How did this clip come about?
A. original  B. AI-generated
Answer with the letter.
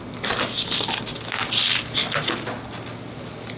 A